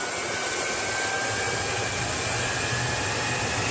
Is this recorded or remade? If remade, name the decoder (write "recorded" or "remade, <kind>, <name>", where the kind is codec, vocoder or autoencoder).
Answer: recorded